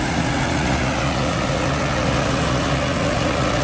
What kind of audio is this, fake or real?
fake